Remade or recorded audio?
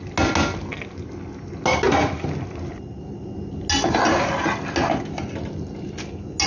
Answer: recorded